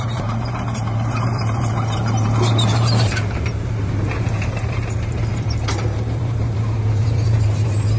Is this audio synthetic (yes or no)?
yes